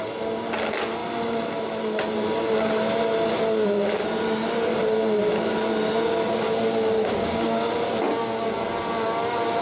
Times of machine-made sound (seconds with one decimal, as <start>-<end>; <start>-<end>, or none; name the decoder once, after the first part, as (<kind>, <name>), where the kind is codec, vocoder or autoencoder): 7.0-7.7 (codec, DAC)